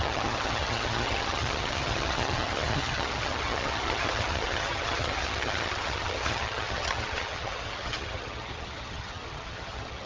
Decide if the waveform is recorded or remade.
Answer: remade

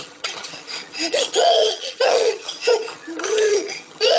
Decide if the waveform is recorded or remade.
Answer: remade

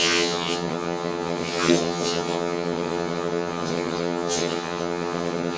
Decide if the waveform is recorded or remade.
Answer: remade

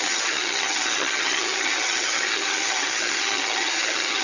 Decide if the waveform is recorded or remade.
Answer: remade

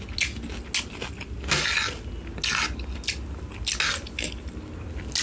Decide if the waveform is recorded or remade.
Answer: recorded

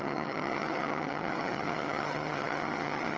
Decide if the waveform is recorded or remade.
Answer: remade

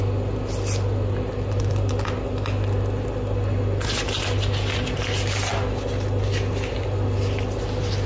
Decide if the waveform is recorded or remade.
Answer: recorded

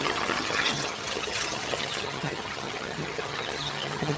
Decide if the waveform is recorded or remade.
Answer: remade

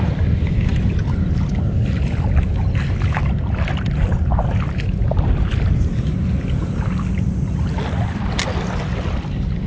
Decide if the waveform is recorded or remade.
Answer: recorded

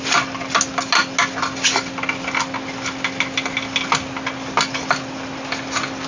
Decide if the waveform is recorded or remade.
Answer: recorded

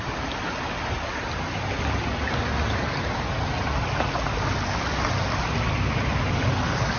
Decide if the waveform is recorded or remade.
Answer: recorded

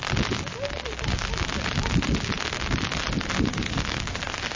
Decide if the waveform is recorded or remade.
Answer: recorded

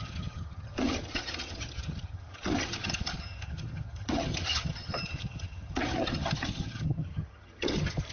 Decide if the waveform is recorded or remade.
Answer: remade